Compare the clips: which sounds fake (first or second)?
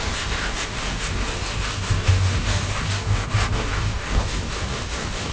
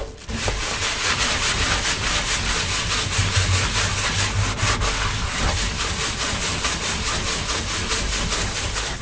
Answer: first